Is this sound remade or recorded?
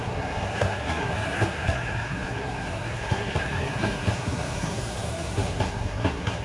remade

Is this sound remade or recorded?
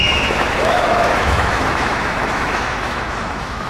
remade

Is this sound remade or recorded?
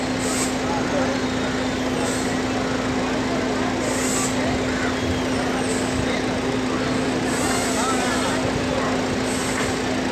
recorded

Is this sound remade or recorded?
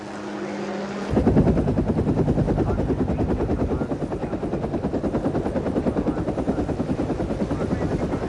recorded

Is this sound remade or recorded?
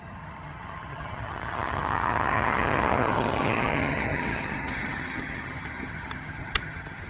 remade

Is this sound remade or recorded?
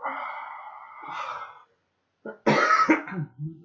recorded